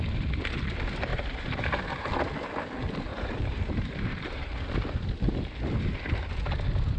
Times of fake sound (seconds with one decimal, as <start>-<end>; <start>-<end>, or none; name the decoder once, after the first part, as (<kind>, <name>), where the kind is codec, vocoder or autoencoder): 1.1-2.1 (vocoder, BigVGAN v2); 3.1-4.6